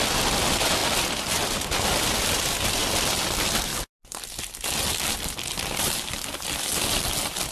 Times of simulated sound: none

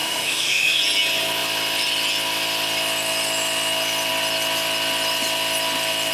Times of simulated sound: 0.0-0.8 (autoencoder, DAC-VAE)

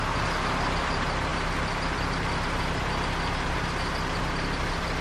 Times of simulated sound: none

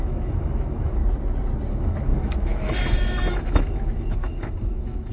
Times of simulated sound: 0.0-1.0 (autoencoder, DAC-VAE); 1.7-5.1

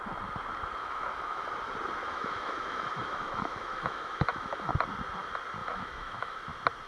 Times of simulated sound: 0.8-1.5 (autoencoder, DAC-VAE); 2.0-4.7; 5.6-6.4

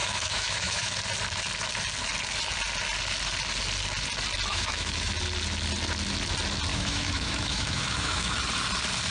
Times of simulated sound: 0.0-1.0 (autoencoder, DAC-VAE); 4.5-5.1; 6.7-8.4

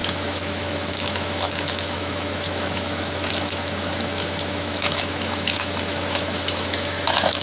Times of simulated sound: 0.0-7.4 (autoencoder, DAC-VAE)